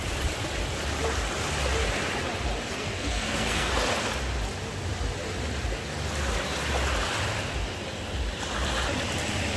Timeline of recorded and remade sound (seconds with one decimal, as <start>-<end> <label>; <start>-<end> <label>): 0.0-2.7 recorded; 2.7-3.7 remade; 3.7-9.6 recorded